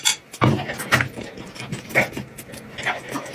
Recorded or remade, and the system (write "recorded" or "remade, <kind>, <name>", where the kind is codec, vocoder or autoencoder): recorded